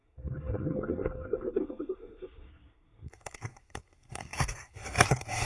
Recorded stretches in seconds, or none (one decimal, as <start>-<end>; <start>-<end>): none